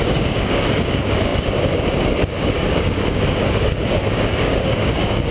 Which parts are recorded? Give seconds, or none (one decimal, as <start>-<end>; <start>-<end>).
none